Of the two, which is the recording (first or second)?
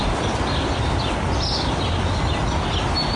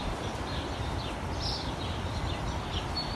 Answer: first